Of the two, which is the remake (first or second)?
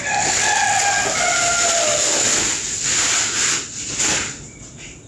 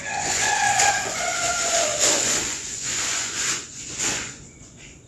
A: second